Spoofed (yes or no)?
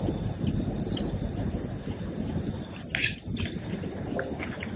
no